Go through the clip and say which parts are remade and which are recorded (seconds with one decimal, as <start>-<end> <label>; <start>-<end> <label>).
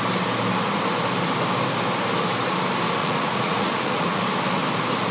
0.0-3.0 recorded; 3.0-4.2 remade; 4.2-5.1 recorded